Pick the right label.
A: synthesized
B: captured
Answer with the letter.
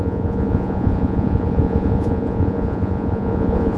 A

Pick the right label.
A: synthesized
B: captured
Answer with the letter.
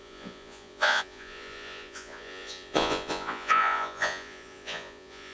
A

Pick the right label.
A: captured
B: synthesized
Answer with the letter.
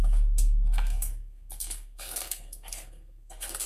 B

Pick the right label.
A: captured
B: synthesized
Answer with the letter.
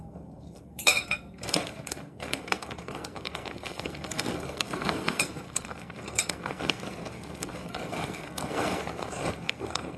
B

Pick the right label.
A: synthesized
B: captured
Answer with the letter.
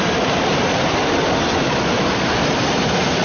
A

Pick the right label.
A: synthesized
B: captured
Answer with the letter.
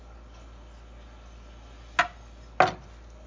B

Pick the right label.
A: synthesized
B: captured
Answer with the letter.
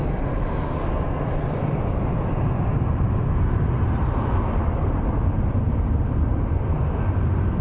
B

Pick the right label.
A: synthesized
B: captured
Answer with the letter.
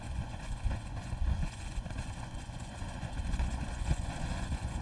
A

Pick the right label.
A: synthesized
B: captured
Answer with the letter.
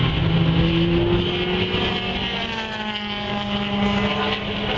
B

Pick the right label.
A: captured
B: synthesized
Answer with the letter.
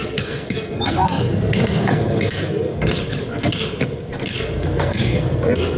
B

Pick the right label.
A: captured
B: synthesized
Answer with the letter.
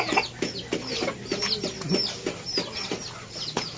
A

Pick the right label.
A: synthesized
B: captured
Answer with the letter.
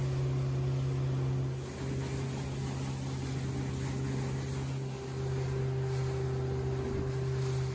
B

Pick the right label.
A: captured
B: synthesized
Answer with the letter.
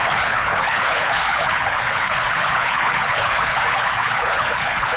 B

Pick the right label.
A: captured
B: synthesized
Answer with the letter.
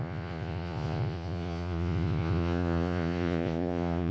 B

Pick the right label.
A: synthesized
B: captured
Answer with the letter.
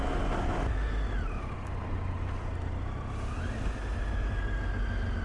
B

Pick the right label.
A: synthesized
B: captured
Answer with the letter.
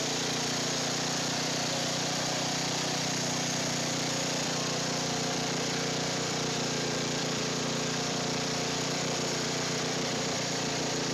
A